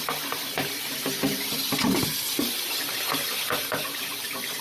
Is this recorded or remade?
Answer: remade